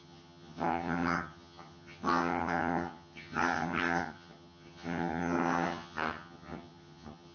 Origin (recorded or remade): remade